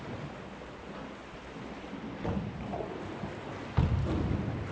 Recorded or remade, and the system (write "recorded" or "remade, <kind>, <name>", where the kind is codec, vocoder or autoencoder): recorded